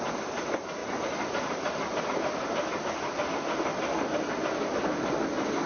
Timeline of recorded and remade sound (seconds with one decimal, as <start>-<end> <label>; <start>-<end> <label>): 0.0-3.7 recorded; 3.7-4.7 remade; 4.7-5.7 recorded